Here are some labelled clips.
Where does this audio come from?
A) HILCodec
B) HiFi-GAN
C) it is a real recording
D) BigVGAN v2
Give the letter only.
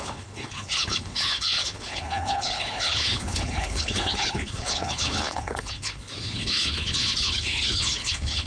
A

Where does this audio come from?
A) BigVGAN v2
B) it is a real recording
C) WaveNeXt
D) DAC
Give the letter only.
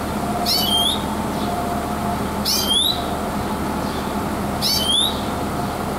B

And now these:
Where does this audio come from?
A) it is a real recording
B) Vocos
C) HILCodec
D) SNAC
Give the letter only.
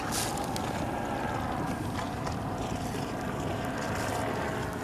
A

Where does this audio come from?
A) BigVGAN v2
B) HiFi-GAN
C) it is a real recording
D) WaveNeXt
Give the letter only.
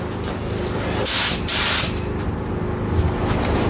C